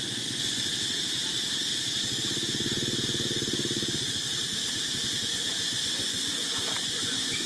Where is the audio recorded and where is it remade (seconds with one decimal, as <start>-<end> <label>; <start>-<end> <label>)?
0.0-0.7 remade; 0.7-5.2 recorded; 5.2-7.5 remade